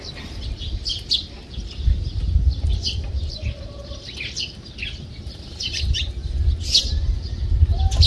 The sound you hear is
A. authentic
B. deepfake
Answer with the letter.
A